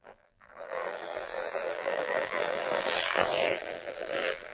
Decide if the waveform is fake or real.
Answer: fake